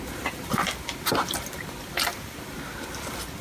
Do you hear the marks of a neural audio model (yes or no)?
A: no